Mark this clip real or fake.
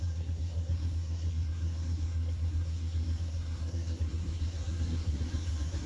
fake